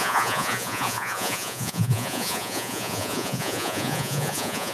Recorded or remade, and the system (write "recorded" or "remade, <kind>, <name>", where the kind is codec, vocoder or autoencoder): remade, vocoder, Vocos